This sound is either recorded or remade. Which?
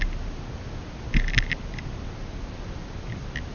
recorded